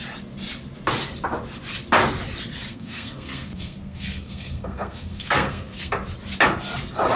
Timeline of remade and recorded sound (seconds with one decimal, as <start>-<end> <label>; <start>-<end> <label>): 0.0-2.7 recorded; 2.7-5.9 remade; 5.9-7.2 recorded